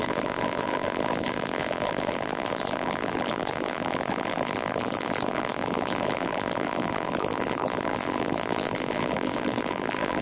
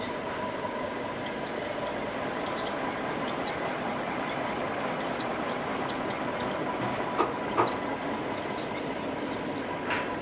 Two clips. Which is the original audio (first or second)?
second